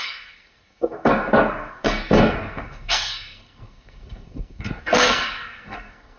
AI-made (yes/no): yes